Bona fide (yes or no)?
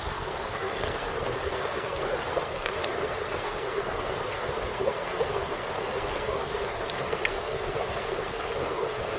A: no